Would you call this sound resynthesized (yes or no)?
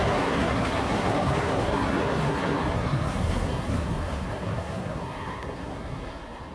yes